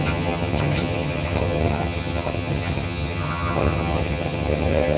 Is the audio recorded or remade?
remade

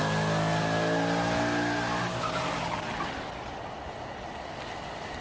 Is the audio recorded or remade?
recorded